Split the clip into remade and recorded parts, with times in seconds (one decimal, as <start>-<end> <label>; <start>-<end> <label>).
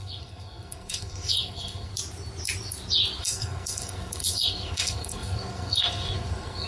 0.0-1.9 remade; 1.9-3.2 recorded; 3.2-6.7 remade